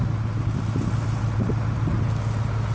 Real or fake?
real